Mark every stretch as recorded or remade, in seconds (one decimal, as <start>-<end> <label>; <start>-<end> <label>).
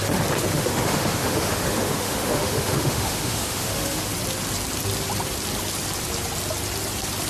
0.0-0.5 recorded; 0.5-4.1 remade; 4.1-7.3 recorded